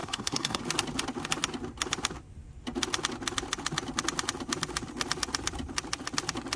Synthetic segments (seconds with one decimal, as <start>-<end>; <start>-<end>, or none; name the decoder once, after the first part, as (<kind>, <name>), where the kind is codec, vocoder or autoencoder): 0.0-0.6 (codec, SNAC)